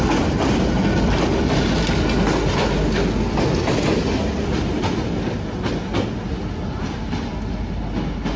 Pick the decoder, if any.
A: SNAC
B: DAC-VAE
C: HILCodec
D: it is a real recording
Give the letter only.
D